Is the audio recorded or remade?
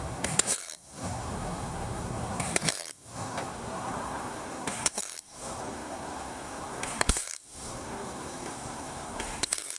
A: remade